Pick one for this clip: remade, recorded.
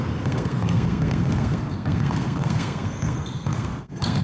remade